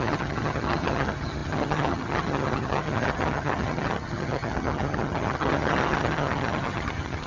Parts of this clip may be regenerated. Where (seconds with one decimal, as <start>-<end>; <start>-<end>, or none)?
0.0-7.3